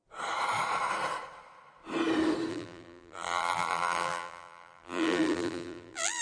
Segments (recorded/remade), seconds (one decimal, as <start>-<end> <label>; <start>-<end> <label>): 0.0-2.5 recorded; 2.5-6.2 remade